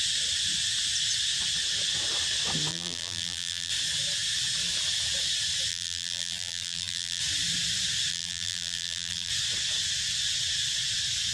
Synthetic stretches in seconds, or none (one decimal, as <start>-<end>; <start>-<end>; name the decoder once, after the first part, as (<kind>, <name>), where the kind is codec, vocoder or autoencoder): 2.7-3.7 (vocoder, BigVGAN v2); 5.7-7.2; 8.1-9.3